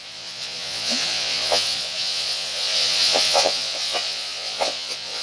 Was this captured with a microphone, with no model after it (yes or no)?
no